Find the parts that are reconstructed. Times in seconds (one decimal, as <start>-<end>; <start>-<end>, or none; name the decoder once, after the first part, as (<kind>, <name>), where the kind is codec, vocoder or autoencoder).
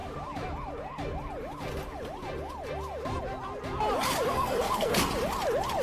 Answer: 4.3-5.0 (codec, SNAC)